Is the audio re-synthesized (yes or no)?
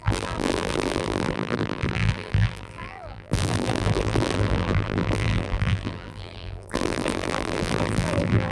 yes